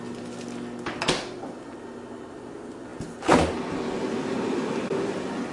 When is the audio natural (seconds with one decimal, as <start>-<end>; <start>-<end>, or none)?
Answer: 0.0-5.5